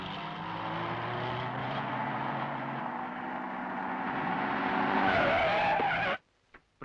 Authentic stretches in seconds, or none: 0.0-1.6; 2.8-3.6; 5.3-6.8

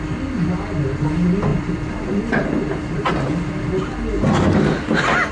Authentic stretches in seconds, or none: 0.0-1.5; 3.1-5.3